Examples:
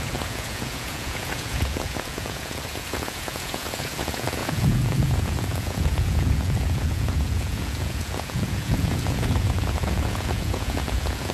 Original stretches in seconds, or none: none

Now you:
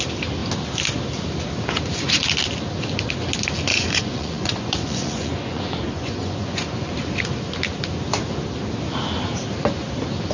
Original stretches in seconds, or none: 0.0-3.7; 6.9-10.3

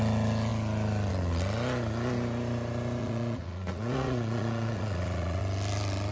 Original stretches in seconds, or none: 0.0-3.0; 5.4-6.1

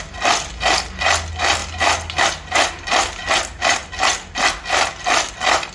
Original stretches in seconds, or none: 0.0-5.7

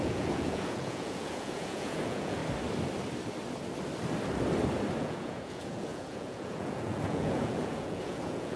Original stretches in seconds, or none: 2.4-5.0